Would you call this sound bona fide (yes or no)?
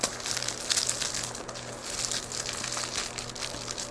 yes